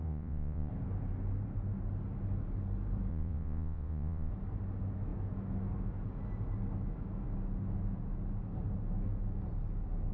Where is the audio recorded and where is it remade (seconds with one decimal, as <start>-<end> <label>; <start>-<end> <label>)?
0.0-0.7 remade; 0.7-3.1 recorded; 3.1-4.3 remade; 4.3-10.1 recorded